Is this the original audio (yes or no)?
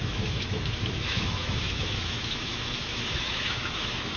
no